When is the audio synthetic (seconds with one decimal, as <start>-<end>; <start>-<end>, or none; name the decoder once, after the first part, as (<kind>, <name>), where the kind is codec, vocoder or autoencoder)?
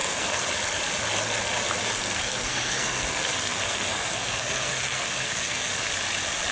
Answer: 0.0-0.5 (codec, SNAC); 1.8-5.7